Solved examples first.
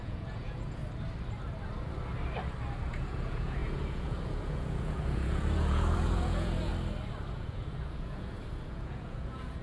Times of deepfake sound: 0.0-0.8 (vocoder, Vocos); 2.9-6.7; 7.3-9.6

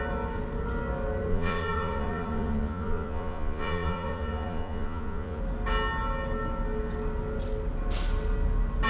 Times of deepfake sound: 1.3-5.4 (vocoder, Vocos)